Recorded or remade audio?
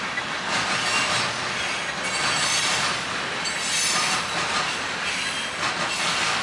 recorded